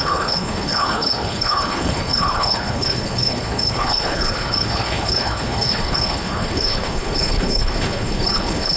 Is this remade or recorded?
remade